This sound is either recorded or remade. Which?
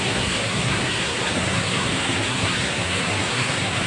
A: remade